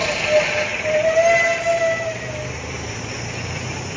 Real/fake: real